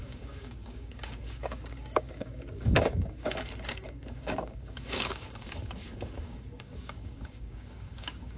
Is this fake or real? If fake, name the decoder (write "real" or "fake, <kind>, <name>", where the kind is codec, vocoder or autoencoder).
fake, codec, DAC